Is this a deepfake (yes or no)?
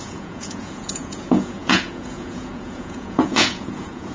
yes